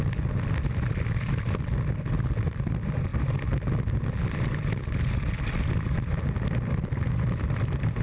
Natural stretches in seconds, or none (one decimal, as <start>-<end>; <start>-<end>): 0.0-8.0